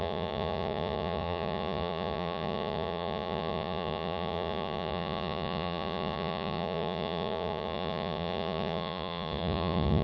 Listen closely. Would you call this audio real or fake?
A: fake